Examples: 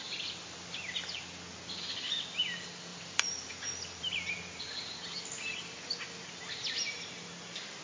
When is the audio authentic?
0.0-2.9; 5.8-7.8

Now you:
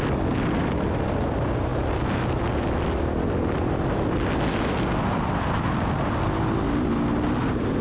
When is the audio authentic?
0.0-7.8

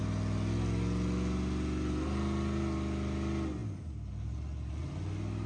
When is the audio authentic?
0.0-5.5

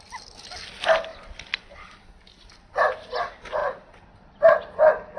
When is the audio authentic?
0.0-5.2

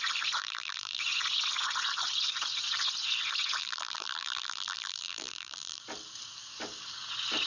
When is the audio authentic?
0.0-0.4; 1.0-3.6; 5.8-7.5

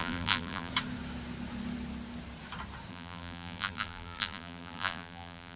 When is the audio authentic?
0.7-2.9